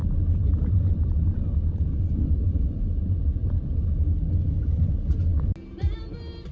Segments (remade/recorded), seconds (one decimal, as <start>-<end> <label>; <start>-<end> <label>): 0.0-3.9 remade; 3.9-6.5 recorded